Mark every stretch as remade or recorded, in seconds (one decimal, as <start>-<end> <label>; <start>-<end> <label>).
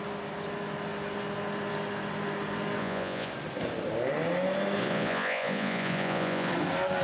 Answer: 0.0-2.8 recorded; 2.8-3.3 remade; 3.3-4.8 recorded; 4.8-6.5 remade; 6.5-7.0 recorded